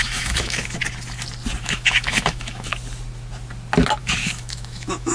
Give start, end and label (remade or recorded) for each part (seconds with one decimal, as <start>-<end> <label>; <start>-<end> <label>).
0.0-0.8 remade; 0.8-1.6 recorded; 1.6-2.7 remade; 2.7-4.0 recorded; 4.0-5.1 remade